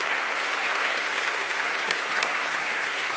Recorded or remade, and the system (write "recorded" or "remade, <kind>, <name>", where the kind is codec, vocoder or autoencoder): remade, codec, SNAC